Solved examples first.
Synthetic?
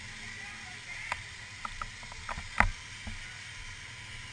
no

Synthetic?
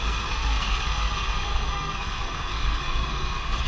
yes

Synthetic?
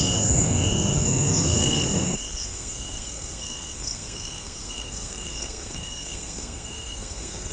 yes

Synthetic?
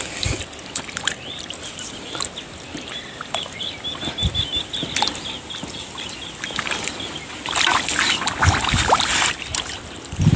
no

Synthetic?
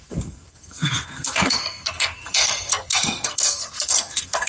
yes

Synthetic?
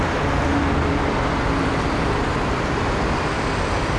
no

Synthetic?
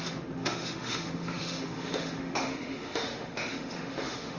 yes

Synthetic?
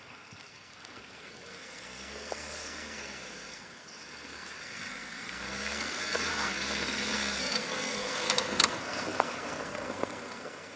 yes